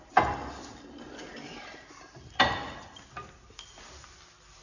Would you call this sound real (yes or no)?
yes